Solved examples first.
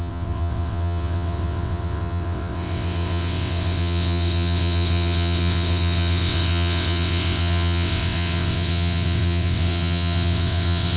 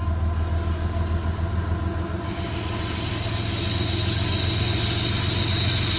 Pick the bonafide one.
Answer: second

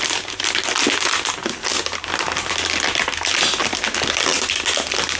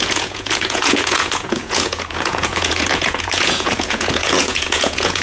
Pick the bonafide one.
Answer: first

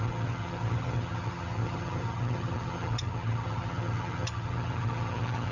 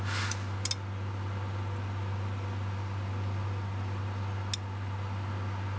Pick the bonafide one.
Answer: second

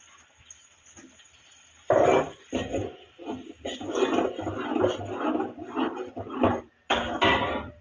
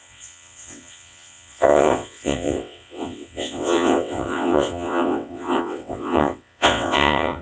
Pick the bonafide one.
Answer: first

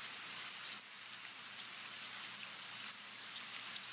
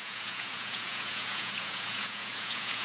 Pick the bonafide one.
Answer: first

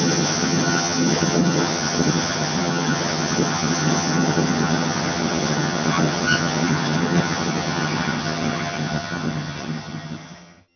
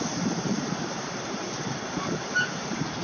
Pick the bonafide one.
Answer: second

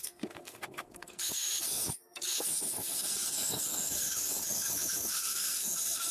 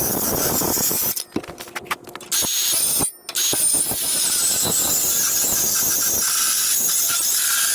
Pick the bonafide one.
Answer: second